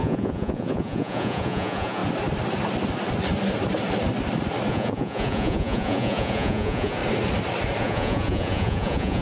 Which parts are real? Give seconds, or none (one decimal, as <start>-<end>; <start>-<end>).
2.0-4.7; 7.0-7.8